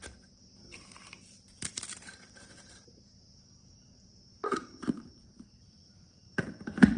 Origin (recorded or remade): remade